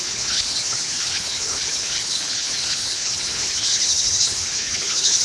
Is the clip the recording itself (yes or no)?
no